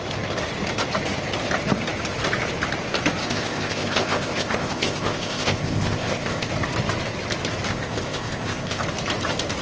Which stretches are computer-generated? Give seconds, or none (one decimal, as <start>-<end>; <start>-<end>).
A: 3.2-6.5; 7.7-8.8